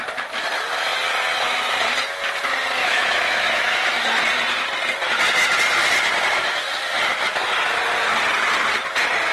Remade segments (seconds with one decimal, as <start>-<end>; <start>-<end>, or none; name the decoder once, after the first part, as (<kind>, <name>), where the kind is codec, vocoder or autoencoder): 2.8-4.0 (autoencoder, DAC-VAE)